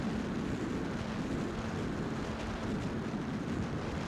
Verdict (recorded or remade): recorded